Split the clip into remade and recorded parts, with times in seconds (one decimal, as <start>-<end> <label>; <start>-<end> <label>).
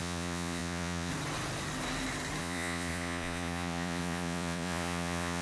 0.0-1.1 remade; 1.1-2.4 recorded; 2.4-5.4 remade